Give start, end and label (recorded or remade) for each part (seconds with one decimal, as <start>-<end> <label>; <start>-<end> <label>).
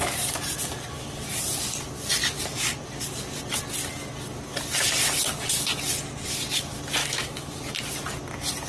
0.0-7.0 recorded; 7.0-7.6 remade; 7.6-8.7 recorded